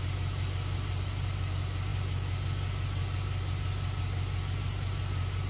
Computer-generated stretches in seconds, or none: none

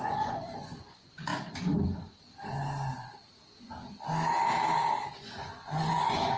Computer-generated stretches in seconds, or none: 0.0-1.3 (vocoder, Vocos); 5.1-6.4

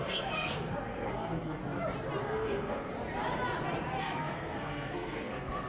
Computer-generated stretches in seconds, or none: 0.0-1.6 (codec, SNAC); 2.2-2.9; 4.0-5.7

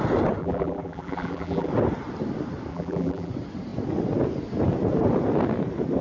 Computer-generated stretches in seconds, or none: 0.4-1.7 (vocoder, BigVGAN v2); 2.7-3.3

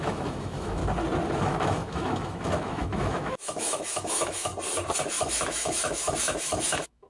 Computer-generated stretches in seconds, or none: 0.0-0.8 (autoencoder, DAC-VAE); 1.4-4.5; 5.2-7.1

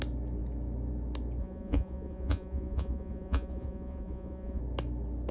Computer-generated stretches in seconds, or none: 1.4-4.6 (vocoder, Vocos)